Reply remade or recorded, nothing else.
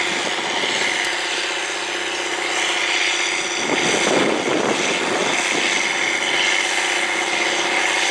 recorded